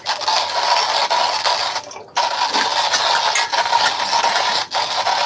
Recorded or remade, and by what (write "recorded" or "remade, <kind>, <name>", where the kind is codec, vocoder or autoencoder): recorded